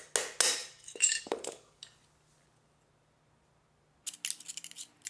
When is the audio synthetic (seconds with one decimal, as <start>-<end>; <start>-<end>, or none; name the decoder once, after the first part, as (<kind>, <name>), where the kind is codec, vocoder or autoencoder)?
0.6-1.8 (codec, DAC)